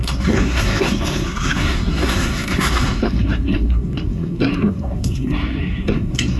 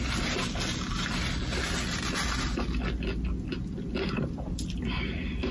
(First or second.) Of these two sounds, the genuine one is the second